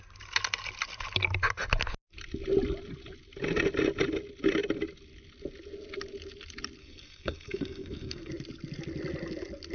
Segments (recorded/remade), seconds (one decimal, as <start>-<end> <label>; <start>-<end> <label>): 0.0-6.8 recorded; 6.8-8.3 remade; 8.3-9.7 recorded